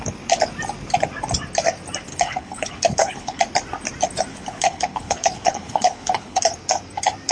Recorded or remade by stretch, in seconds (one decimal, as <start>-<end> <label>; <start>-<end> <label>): 0.0-2.1 recorded; 2.1-3.4 remade; 3.4-4.3 recorded; 4.3-6.4 remade; 6.4-7.3 recorded